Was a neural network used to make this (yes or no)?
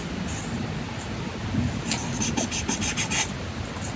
no